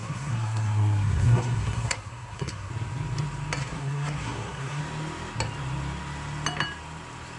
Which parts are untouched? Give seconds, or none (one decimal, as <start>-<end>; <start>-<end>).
2.7-3.6; 4.8-7.4